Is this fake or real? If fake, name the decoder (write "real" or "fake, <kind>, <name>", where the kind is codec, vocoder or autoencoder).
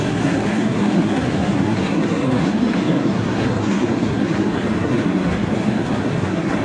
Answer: fake, codec, SNAC